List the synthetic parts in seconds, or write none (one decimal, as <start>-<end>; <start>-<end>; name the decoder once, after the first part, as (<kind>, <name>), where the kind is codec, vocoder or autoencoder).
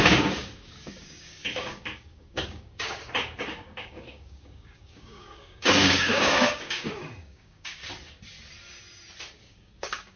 0.0-7.8 (codec, DAC); 9.4-10.2